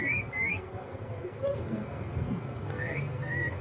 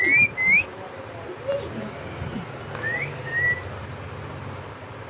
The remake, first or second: first